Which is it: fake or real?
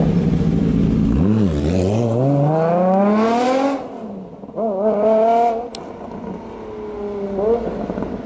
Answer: real